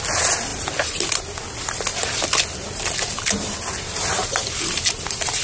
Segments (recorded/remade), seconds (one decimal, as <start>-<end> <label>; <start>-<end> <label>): 0.0-5.4 recorded